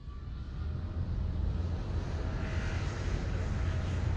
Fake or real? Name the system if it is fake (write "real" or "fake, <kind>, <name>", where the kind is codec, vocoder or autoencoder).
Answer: real